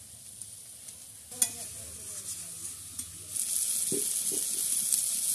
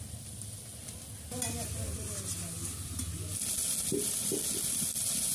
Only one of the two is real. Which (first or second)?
first